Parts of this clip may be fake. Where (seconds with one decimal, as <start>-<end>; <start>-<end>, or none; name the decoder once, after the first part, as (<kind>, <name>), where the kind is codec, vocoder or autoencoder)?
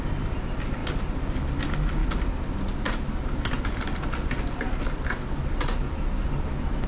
none